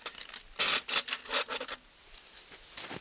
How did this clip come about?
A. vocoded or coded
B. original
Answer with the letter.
B